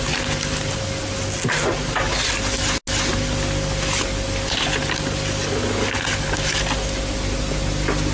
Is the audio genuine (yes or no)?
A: yes